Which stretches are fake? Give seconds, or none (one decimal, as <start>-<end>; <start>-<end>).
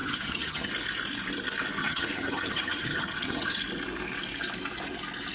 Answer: 0.0-0.7; 1.8-3.6